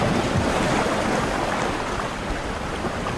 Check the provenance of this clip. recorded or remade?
recorded